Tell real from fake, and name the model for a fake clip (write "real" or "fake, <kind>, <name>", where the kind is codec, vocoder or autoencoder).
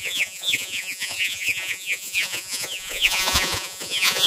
fake, vocoder, Vocos